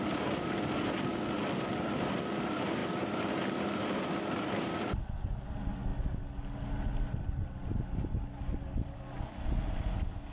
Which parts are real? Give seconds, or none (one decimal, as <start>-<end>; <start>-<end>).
0.0-10.3